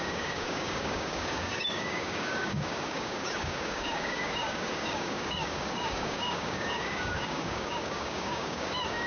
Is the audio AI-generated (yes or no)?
yes